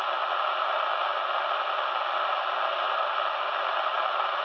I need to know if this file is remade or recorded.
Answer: recorded